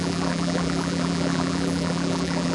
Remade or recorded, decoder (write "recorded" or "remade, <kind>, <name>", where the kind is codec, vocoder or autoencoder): remade, vocoder, BigVGAN v2